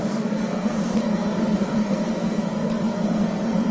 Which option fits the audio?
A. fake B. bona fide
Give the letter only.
A